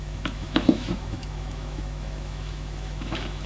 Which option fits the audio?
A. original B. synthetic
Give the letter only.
B